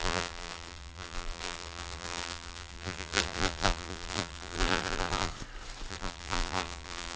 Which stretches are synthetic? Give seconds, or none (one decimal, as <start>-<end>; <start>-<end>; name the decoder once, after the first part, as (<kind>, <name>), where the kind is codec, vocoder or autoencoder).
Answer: 0.0-5.3 (vocoder, BigVGAN v2); 5.9-7.2

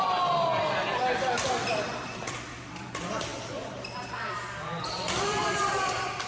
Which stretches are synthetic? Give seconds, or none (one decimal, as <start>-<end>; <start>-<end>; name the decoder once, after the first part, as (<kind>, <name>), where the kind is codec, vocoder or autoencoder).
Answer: 1.6-2.9 (vocoder, BigVGAN v2); 3.3-5.7